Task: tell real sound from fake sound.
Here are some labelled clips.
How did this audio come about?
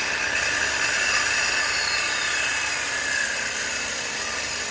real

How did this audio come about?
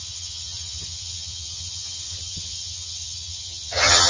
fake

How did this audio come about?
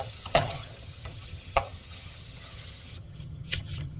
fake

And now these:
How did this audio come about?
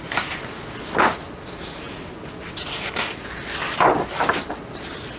real